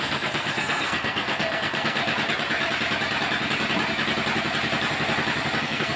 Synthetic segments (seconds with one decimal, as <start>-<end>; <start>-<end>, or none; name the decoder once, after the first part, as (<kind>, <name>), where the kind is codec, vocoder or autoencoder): 0.0-2.0 (codec, SNAC); 5.6-6.0